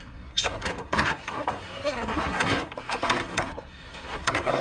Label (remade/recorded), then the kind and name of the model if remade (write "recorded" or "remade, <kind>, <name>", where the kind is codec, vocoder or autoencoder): remade, codec, SNAC